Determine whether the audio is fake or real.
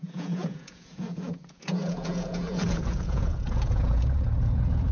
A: fake